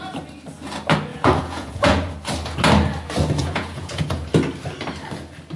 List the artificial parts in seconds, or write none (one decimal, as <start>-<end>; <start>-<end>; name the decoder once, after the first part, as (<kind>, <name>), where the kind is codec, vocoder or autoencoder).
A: 1.1-2.1 (vocoder, Vocos); 3.4-4.3